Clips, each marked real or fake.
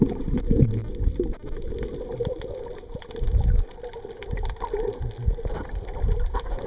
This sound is real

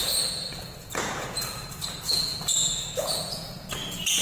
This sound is fake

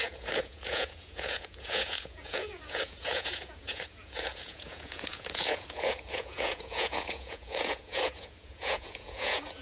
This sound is fake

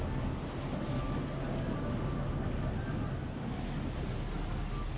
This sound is real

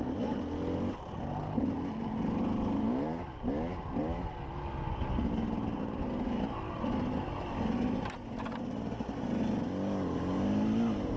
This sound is real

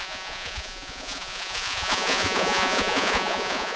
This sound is fake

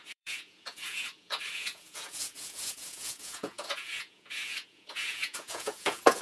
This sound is fake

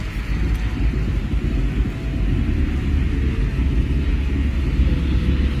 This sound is real